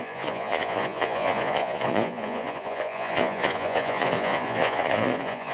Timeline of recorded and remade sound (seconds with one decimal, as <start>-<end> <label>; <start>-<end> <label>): 0.0-5.5 remade